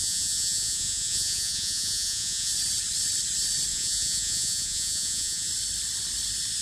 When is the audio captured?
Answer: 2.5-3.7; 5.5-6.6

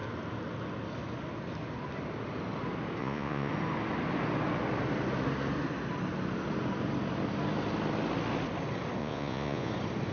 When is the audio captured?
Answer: 0.0-3.0; 3.5-9.0; 9.7-10.1

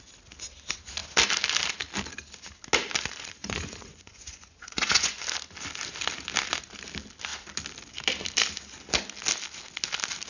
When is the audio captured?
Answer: 0.0-3.4; 5.2-10.3

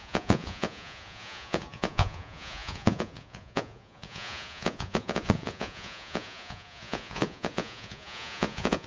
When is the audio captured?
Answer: none

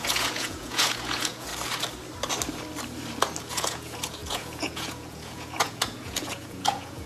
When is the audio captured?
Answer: 1.5-3.4

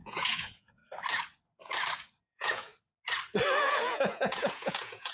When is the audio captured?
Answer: 0.8-2.2; 2.7-3.6

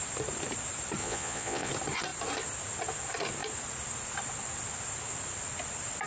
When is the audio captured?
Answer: 0.0-1.0; 1.7-6.1